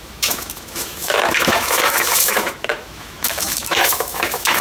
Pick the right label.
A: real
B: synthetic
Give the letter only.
B